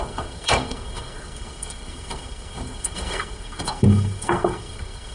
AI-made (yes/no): yes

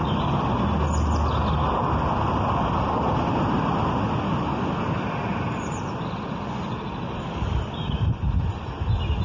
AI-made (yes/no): no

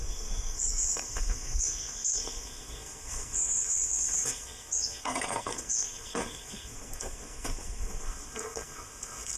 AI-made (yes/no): yes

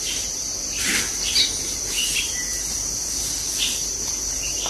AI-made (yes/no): no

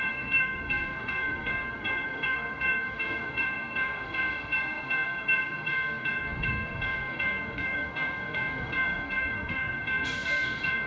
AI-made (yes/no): yes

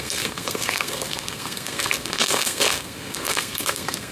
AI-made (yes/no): yes